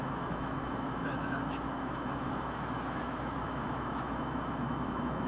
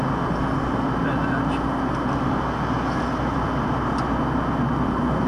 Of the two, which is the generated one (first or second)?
first